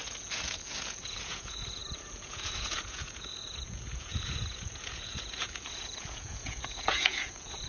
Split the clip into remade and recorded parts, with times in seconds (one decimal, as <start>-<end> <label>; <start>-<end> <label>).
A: 0.0-7.7 remade